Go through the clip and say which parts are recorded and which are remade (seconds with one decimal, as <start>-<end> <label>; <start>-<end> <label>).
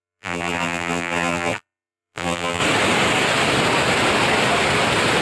0.0-2.6 remade; 2.6-5.2 recorded